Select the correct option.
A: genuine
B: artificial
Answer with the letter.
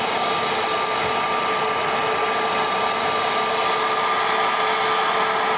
A